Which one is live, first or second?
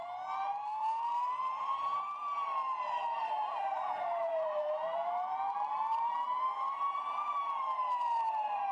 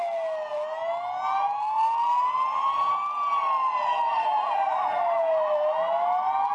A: second